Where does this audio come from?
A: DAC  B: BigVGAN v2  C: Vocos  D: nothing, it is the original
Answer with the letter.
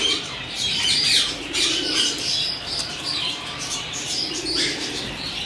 B